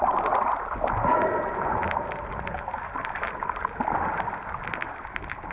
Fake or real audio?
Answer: real